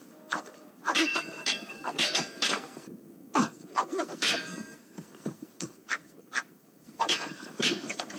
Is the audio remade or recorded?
remade